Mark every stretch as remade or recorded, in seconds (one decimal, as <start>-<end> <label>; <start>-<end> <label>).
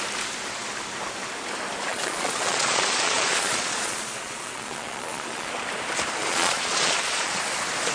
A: 0.0-1.9 recorded; 1.9-5.5 remade; 5.5-6.2 recorded; 6.2-7.4 remade; 7.4-7.9 recorded